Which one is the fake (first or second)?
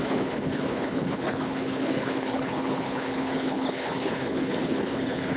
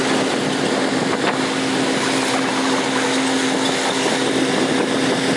first